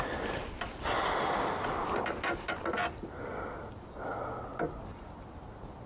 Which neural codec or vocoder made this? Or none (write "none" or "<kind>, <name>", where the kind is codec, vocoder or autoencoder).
none